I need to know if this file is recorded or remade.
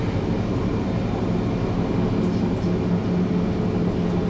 recorded